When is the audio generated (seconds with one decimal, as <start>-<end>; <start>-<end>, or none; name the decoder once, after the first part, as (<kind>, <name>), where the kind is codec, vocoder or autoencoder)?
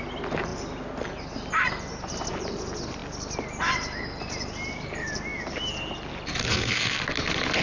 6.4-7.0 (codec, SNAC)